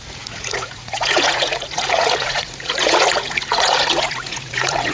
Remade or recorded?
remade